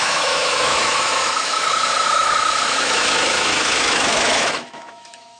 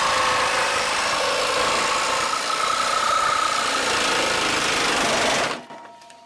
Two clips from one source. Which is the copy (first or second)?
first